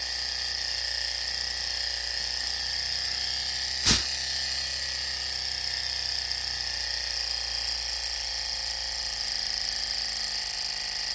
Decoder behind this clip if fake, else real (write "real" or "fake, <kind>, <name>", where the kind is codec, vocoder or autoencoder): real